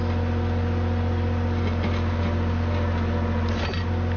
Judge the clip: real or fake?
real